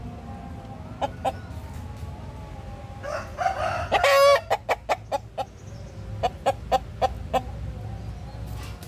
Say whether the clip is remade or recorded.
recorded